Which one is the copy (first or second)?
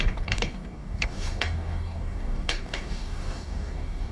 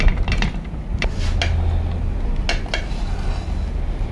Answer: first